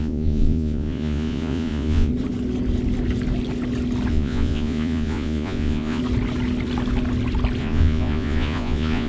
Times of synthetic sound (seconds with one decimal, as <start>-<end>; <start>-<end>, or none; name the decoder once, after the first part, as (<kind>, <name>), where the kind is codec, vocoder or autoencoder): 0.0-2.1 (vocoder, Vocos); 4.1-6.0; 7.6-9.1